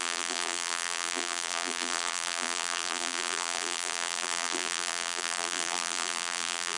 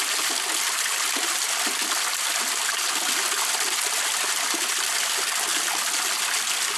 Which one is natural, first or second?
second